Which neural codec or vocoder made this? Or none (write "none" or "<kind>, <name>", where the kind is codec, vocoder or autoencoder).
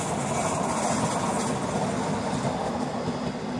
none